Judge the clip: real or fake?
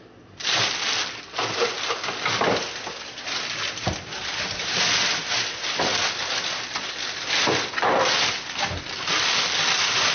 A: real